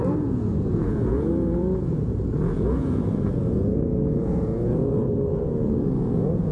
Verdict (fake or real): fake